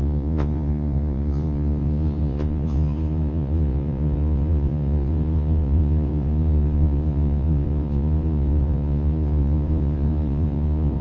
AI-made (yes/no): yes